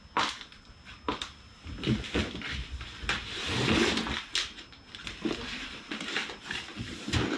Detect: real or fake real